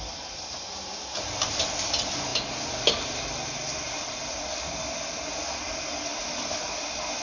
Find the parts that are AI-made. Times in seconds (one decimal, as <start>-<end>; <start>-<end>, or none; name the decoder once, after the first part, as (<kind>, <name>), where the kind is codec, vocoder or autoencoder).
none